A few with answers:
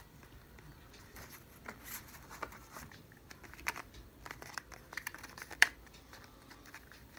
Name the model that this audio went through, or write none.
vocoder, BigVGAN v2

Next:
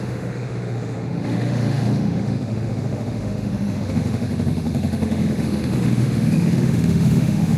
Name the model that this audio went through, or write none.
autoencoder, DAC-VAE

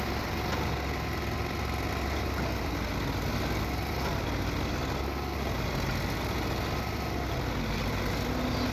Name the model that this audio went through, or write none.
none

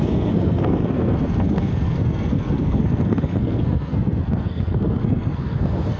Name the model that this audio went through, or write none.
codec, SNAC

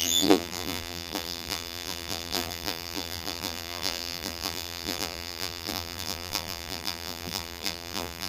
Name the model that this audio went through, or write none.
vocoder, BigVGAN v2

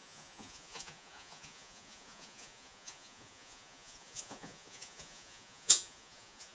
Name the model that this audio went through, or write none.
vocoder, Vocos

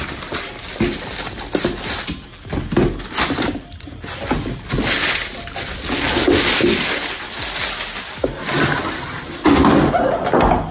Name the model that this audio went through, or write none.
none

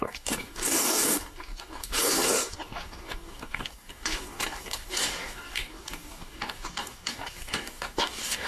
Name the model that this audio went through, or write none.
codec, DAC